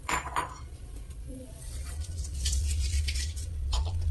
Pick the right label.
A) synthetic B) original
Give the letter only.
A